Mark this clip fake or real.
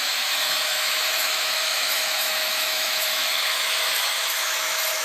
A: fake